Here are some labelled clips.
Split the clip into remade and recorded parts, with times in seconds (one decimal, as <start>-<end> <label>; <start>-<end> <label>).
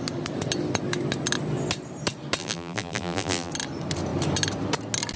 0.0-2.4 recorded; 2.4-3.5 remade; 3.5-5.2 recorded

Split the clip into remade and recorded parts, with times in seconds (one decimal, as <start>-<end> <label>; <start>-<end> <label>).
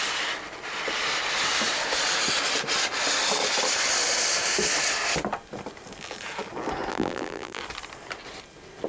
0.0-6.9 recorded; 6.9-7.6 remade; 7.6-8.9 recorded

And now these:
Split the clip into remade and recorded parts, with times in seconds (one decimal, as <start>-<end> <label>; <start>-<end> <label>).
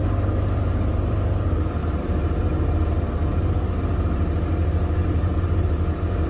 0.0-0.7 recorded; 0.7-6.3 remade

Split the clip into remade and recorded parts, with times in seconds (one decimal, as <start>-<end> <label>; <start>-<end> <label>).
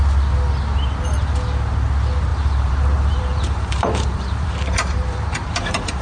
0.0-2.3 recorded; 2.3-6.0 remade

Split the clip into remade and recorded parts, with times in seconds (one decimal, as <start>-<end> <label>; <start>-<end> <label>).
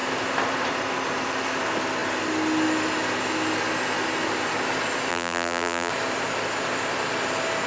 0.0-5.1 recorded; 5.1-5.9 remade; 5.9-7.7 recorded